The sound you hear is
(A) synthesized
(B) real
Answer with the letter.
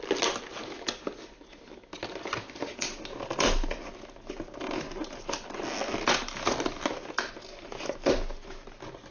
B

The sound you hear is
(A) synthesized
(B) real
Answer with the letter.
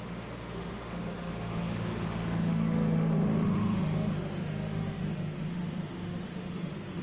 A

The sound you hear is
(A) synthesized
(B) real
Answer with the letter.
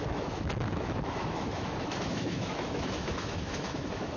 A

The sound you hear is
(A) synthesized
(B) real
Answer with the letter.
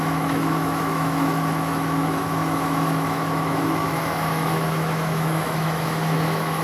A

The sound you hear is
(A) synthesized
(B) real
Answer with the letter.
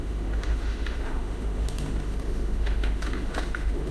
A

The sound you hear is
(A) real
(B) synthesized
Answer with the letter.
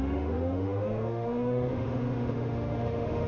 B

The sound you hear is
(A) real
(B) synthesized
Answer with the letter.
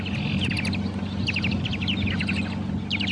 A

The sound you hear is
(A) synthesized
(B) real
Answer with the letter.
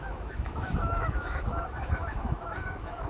A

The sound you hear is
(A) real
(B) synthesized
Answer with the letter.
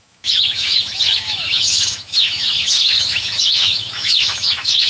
B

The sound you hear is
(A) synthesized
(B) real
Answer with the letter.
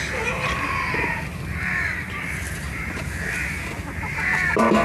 B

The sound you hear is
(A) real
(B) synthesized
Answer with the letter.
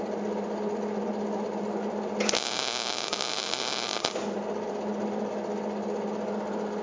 A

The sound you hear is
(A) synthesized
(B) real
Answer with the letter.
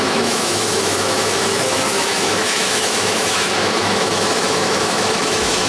A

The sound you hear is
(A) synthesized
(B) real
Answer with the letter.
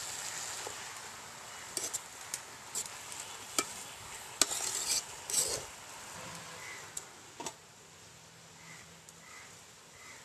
B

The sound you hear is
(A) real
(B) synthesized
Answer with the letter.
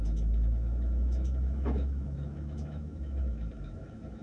B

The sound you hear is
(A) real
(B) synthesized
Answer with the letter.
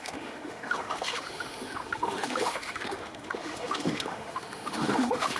B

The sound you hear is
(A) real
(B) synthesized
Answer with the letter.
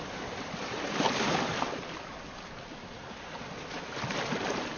A